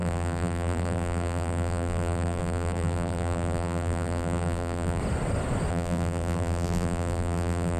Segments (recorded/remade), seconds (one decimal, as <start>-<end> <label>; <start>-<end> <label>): 0.0-5.0 remade; 5.0-5.7 recorded; 5.7-7.8 remade